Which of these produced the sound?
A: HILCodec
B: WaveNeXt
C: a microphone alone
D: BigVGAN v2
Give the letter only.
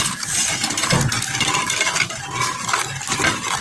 C